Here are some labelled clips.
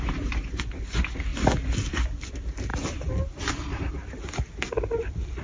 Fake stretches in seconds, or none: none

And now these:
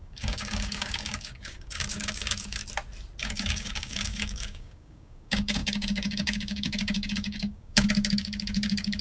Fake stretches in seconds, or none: 0.0-2.6 (codec, DAC); 3.2-9.0

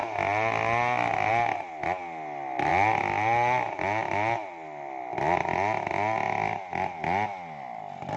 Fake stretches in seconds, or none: none

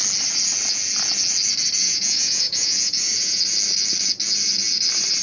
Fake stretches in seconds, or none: 1.8-3.4 (vocoder, Vocos)